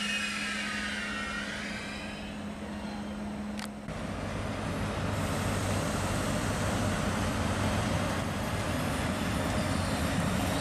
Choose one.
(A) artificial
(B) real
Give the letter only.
B